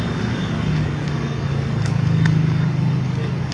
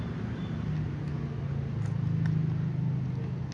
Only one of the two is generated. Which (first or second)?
first